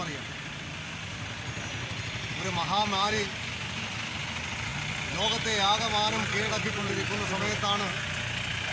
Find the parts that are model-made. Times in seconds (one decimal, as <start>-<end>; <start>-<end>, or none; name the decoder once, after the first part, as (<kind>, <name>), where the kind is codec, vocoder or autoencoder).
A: none